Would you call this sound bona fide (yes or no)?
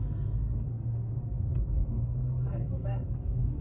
no